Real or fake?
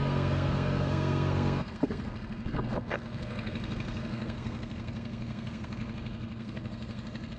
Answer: fake